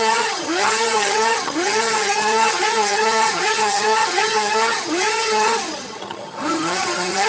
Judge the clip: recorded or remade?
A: remade